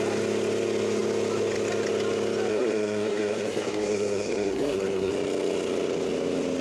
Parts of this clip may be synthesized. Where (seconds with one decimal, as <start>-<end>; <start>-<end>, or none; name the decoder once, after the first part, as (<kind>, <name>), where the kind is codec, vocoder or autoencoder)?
2.5-5.1 (codec, SNAC)

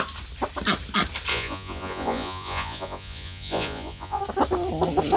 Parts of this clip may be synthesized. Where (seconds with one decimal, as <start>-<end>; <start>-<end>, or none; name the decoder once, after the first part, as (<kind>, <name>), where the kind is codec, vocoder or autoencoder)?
1.3-4.2 (vocoder, Vocos)

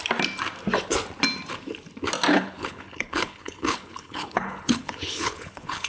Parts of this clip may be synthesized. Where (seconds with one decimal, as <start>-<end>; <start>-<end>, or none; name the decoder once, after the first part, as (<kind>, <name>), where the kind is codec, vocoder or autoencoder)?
2.3-5.9 (codec, HILCodec)

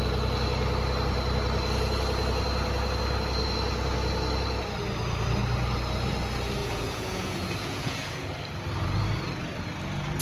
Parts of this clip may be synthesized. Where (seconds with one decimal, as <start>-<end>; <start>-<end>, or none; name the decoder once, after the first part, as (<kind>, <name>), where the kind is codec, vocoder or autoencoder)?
6.6-8.4 (vocoder, Vocos)

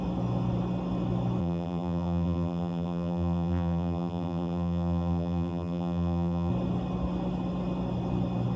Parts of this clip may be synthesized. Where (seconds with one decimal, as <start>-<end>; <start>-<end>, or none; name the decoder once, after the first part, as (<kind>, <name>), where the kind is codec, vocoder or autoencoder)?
1.4-6.5 (vocoder, BigVGAN v2)

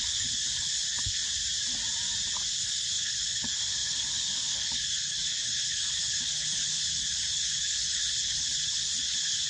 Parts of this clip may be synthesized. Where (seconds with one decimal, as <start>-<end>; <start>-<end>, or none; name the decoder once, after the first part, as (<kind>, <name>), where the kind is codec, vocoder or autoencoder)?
0.0-1.2 (codec, HILCodec); 2.5-9.5

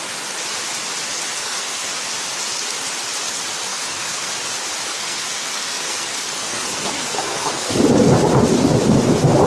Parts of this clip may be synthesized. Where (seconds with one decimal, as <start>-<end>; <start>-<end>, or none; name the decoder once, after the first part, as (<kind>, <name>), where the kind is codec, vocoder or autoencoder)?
1.3-2.0 (codec, SNAC); 3.7-4.3; 4.9-7.8